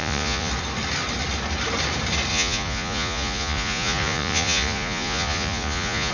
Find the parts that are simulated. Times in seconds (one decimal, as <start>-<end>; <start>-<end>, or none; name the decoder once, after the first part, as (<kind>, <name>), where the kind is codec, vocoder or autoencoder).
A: 0.0-0.5 (vocoder, Vocos); 2.3-6.1